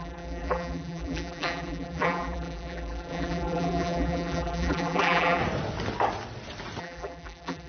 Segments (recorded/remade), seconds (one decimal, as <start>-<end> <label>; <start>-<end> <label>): 0.0-5.4 remade; 5.4-6.8 recorded; 6.8-7.7 remade